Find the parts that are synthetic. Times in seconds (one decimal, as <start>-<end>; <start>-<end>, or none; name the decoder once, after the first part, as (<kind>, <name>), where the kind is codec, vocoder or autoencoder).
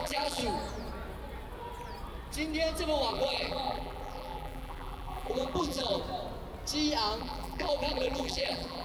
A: 0.0-0.4 (vocoder, BigVGAN v2); 3.1-6.0; 7.2-8.8